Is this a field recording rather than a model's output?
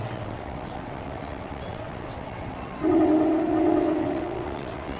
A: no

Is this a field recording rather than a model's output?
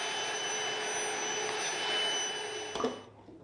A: yes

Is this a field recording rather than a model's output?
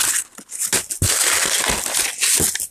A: yes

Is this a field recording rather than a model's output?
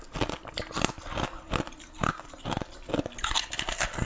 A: yes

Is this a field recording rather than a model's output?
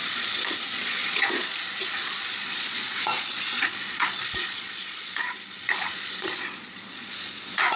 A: no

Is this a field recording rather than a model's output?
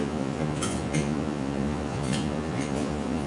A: no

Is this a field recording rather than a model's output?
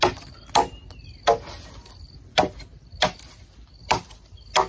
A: yes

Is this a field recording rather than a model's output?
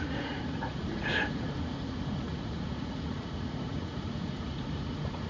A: no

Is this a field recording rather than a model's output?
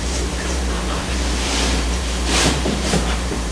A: no